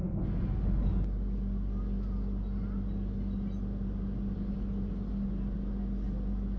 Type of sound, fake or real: real